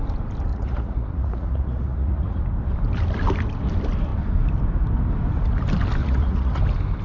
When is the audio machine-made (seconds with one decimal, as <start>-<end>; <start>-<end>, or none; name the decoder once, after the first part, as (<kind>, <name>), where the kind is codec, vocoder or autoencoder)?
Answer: 0.5-2.4 (vocoder, Vocos); 6.0-6.6